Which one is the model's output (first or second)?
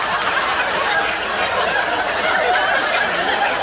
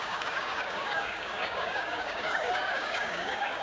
second